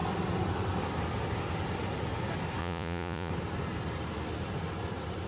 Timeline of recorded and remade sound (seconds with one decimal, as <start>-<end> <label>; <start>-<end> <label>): 0.0-2.6 recorded; 2.6-3.3 remade; 3.3-5.3 recorded